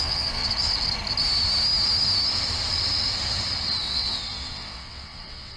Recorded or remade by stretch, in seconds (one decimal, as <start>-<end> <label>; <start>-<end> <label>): 0.0-0.4 remade; 0.4-3.8 recorded; 3.8-5.6 remade

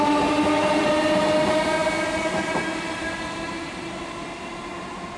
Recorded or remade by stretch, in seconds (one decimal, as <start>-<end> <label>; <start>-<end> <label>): 0.0-5.2 recorded

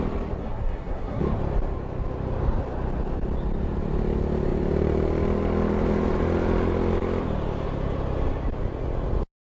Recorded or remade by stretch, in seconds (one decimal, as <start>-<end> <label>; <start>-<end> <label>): 0.0-0.4 recorded; 0.4-1.2 remade; 1.2-9.5 recorded

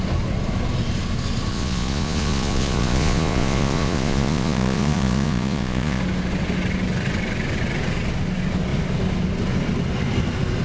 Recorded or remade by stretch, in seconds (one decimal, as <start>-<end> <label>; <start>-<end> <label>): 0.0-1.5 recorded; 1.5-6.0 remade; 6.0-10.6 recorded

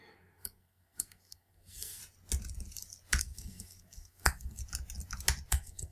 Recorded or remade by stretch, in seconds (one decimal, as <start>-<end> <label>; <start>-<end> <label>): 0.0-2.0 remade; 2.0-3.2 recorded; 3.2-4.6 remade; 4.6-5.5 recorded; 5.5-5.9 remade